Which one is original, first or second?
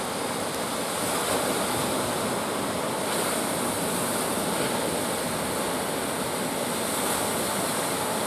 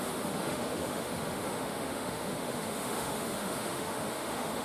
first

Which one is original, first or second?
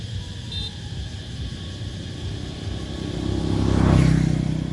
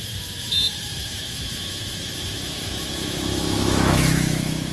first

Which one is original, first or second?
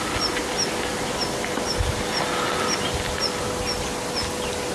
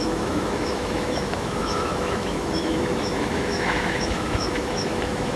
first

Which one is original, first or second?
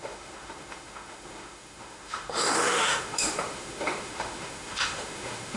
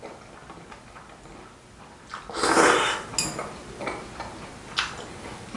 second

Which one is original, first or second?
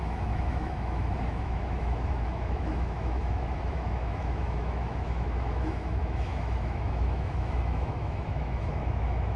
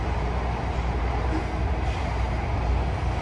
second